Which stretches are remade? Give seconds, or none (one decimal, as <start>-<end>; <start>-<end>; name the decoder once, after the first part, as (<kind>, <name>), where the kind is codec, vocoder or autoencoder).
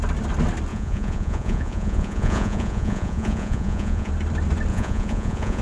0.7-4.1 (vocoder, Vocos); 4.7-5.6